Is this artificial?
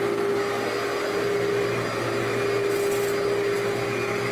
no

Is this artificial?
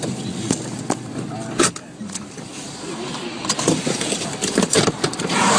yes